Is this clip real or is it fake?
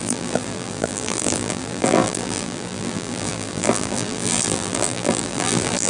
fake